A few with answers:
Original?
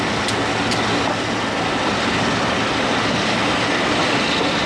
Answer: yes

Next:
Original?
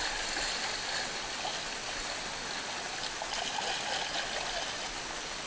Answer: yes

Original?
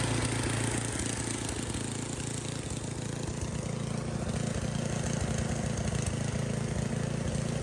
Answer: yes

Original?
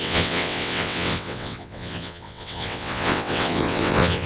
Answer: no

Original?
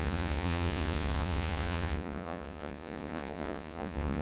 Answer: no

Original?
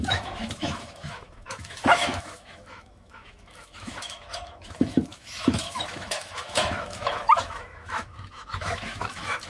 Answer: no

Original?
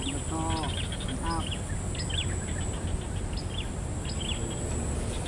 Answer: yes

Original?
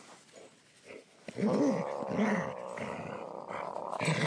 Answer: yes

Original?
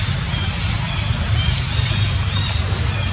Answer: yes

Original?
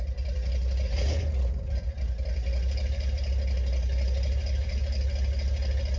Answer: yes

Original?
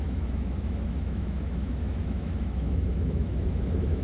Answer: no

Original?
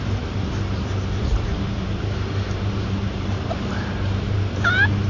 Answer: no